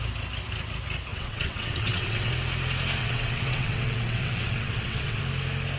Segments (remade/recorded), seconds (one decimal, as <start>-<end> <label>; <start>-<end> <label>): 0.0-1.1 recorded; 1.1-2.3 remade; 2.3-3.0 recorded; 3.0-5.2 remade; 5.2-5.8 recorded